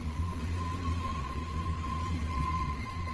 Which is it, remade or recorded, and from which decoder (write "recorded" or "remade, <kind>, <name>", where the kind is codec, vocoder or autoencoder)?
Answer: remade, vocoder, Vocos